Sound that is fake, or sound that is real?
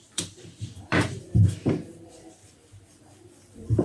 fake